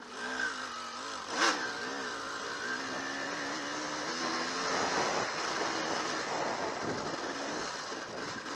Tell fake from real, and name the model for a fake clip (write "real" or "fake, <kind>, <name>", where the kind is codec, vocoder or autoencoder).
real